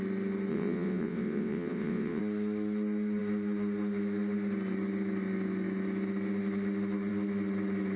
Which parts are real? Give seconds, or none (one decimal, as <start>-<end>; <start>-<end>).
0.0-0.5; 2.2-8.0